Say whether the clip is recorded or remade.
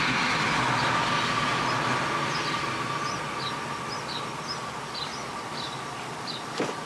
recorded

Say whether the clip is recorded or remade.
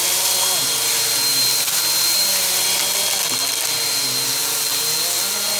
recorded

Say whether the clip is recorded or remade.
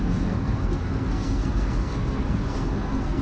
remade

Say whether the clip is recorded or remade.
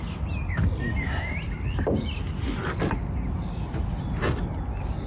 recorded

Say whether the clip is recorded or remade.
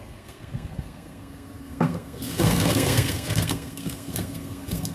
remade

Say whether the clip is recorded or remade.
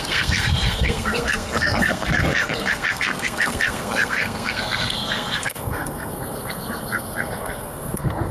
remade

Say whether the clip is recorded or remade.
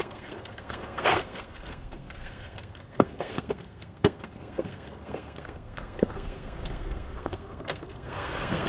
remade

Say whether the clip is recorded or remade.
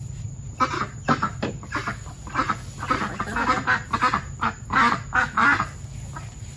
recorded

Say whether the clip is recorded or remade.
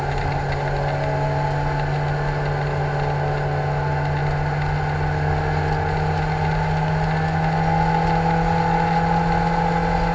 recorded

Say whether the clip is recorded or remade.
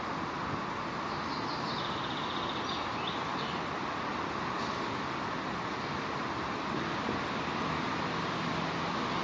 recorded